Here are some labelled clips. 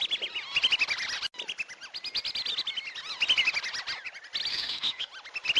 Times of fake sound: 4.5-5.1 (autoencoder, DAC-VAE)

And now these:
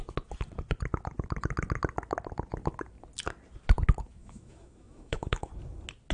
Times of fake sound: 4.2-5.5 (autoencoder, DAC-VAE)

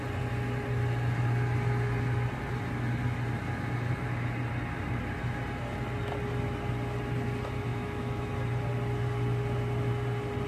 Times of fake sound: 7.7-8.3 (autoencoder, DAC-VAE)